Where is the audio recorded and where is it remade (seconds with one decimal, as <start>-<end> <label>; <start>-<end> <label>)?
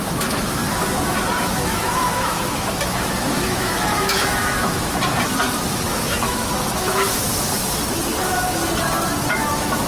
0.0-0.6 remade; 0.6-1.4 recorded; 1.4-5.0 remade; 5.0-5.7 recorded; 5.7-7.3 remade; 7.3-8.2 recorded; 8.2-8.6 remade; 8.6-9.3 recorded; 9.3-9.9 remade